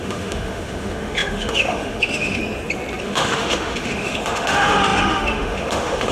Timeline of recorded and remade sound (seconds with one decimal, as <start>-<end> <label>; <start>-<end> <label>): 0.0-2.4 remade; 2.4-3.0 recorded; 3.0-6.1 remade